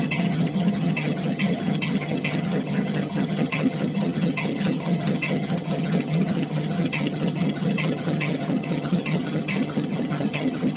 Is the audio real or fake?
fake